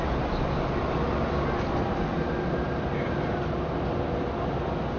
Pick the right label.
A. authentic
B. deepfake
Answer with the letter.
A